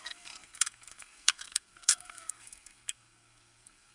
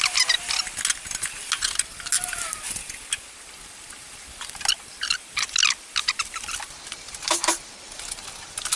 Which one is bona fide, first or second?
second